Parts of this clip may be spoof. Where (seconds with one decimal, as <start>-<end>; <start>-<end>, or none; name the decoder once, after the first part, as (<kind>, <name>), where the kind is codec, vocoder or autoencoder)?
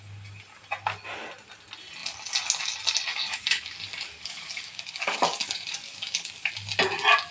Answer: 3.1-6.5 (codec, DAC)